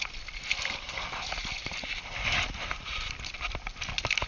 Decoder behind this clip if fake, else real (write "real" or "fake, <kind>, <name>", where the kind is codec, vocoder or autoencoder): real